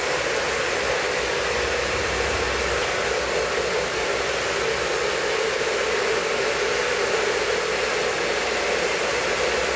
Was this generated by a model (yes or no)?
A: no